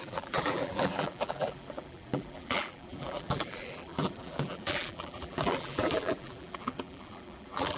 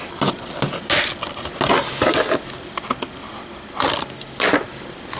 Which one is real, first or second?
second